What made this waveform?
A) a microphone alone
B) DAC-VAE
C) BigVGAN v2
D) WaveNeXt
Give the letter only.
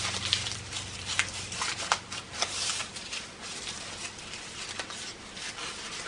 C